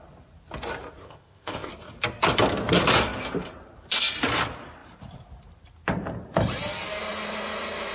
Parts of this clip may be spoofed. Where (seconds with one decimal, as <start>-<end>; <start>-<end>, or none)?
1.0-1.7